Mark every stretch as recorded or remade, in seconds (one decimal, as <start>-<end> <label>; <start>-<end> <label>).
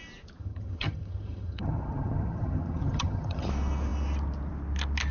0.0-0.4 recorded; 0.4-3.5 remade; 3.5-5.1 recorded